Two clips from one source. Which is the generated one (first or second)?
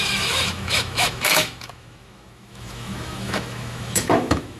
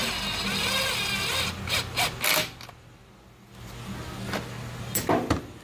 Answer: first